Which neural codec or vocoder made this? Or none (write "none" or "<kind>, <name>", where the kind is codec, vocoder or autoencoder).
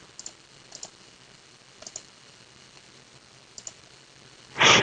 none